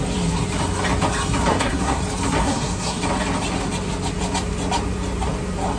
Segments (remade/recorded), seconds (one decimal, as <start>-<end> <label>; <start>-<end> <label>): 0.0-1.5 recorded; 1.5-2.0 remade; 2.0-2.4 recorded; 2.4-3.0 remade; 3.0-5.8 recorded